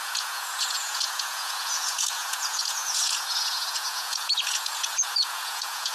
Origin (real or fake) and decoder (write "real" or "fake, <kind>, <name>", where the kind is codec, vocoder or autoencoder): fake, vocoder, Vocos